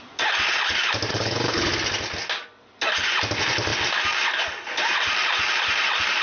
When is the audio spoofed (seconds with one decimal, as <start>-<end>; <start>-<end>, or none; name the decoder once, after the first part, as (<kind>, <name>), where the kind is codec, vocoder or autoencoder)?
1.1-1.7 (codec, HILCodec)